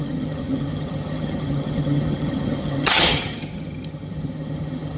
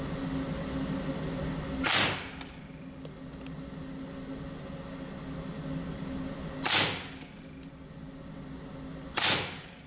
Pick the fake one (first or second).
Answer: first